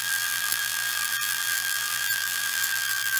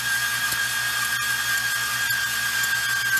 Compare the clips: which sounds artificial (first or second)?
first